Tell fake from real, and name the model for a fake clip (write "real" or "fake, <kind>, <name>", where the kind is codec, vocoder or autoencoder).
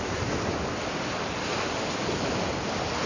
real